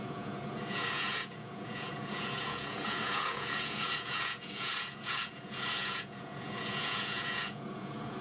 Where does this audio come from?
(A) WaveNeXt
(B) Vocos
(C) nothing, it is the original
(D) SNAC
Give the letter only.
B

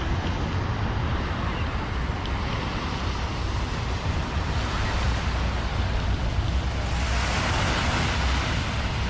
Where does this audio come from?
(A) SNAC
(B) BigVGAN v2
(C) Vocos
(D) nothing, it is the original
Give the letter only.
D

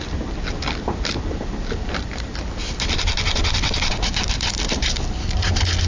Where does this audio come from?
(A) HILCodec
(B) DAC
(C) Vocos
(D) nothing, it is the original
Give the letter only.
D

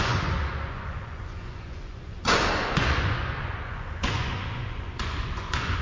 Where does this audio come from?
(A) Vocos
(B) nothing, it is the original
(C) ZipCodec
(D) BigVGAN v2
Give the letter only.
A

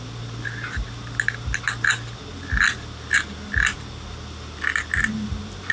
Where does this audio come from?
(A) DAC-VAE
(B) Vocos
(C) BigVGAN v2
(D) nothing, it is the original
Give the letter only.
D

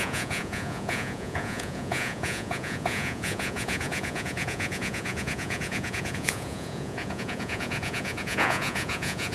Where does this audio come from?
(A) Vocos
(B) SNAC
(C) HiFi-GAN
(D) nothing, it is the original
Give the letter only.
A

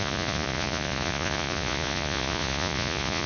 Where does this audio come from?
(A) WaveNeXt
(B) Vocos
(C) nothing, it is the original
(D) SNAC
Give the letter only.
B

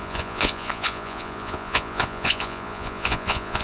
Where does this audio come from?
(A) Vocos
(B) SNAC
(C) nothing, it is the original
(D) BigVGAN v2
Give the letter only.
A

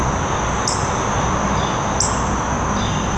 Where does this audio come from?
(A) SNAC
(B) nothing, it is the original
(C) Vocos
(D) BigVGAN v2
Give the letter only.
B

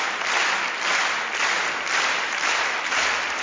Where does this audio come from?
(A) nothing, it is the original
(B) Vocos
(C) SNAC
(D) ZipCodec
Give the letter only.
A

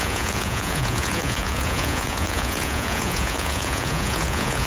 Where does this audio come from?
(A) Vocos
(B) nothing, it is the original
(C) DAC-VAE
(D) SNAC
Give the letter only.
A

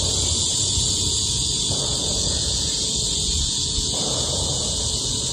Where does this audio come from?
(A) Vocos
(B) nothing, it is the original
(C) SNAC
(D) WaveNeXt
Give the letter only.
A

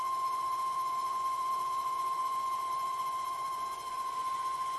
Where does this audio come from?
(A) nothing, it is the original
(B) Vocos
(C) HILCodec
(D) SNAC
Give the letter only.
B